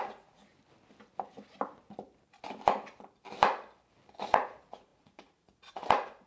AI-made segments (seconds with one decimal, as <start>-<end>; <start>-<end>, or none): 0.0-0.4; 4.2-6.3

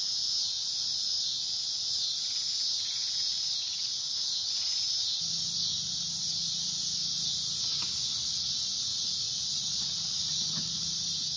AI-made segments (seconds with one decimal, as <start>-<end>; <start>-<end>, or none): none

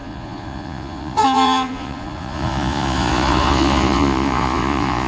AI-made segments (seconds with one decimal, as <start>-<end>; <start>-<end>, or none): 0.0-5.1

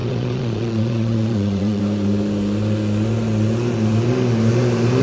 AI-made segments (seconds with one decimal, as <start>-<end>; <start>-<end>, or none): 0.0-1.8

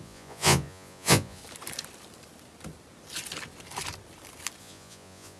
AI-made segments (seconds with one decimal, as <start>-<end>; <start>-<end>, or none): 0.0-1.4; 4.6-5.4